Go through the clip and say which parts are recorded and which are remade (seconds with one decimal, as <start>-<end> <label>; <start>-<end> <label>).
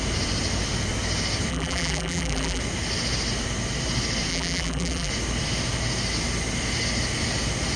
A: 0.0-1.5 recorded; 1.5-2.6 remade; 2.6-4.3 recorded; 4.3-5.1 remade; 5.1-7.8 recorded